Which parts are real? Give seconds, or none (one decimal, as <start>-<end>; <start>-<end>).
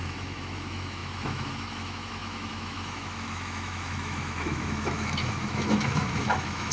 none